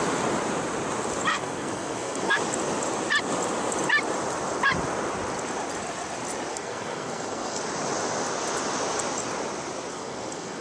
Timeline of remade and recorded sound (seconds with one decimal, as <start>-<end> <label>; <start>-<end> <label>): 0.0-1.3 recorded; 1.3-2.4 remade; 2.4-6.5 recorded; 6.5-7.6 remade; 7.6-9.9 recorded; 9.9-10.6 remade